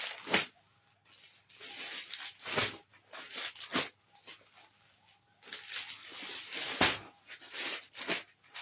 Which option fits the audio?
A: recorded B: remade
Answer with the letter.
A